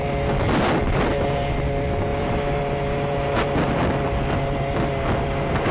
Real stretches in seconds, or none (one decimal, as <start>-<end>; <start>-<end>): 0.0-5.7